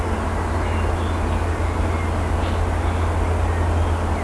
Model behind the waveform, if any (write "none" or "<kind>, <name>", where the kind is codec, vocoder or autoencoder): none